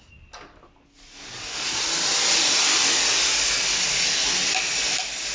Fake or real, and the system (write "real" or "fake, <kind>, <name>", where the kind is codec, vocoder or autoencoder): real